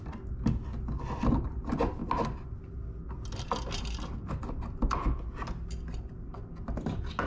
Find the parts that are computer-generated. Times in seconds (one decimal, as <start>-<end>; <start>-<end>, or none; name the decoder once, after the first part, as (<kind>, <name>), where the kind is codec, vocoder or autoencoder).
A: none